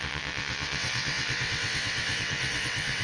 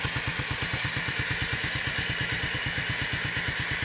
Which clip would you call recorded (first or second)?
second